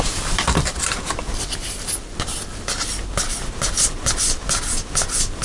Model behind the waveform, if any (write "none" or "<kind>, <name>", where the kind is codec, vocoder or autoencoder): none